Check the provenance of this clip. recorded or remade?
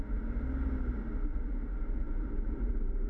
recorded